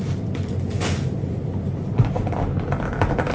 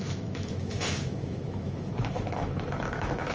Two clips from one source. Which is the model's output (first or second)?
second